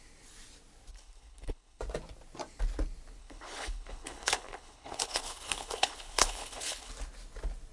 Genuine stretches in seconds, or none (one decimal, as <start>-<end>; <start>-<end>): 0.0-0.9; 1.8-3.2; 6.9-7.7